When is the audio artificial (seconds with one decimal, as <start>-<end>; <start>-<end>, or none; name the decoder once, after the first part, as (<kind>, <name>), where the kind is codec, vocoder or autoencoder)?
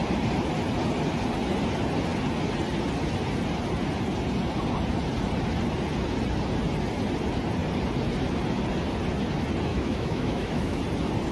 9.7-10.8 (autoencoder, DAC-VAE)